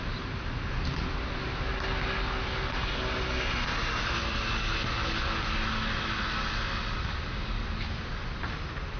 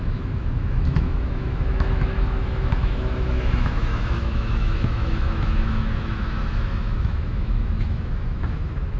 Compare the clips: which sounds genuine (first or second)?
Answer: first